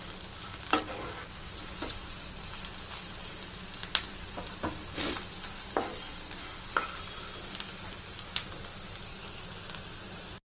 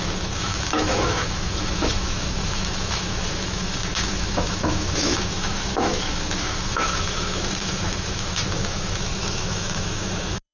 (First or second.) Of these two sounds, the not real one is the second